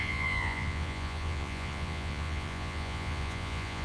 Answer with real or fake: fake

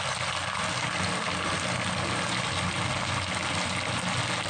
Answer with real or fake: real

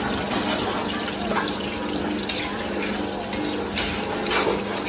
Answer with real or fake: real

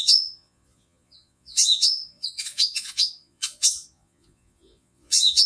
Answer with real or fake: fake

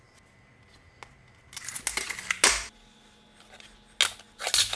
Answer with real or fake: real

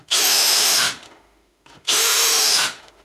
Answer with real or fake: fake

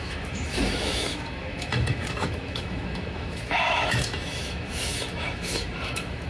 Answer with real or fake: fake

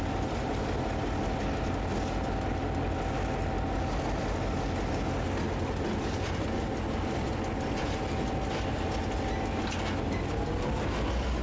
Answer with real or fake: real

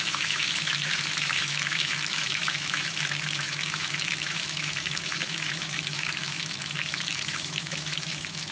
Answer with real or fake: fake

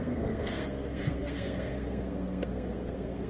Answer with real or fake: fake